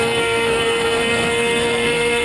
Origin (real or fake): fake